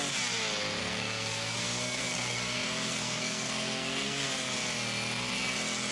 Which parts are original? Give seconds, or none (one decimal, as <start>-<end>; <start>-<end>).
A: 0.0-0.8; 4.3-5.9